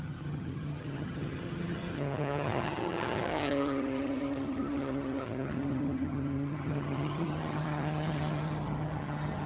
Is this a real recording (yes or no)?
no